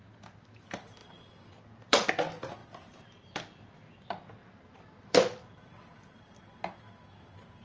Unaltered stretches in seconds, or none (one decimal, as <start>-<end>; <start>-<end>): 0.0-1.0; 2.1-2.6; 3.9-4.4; 6.4-7.6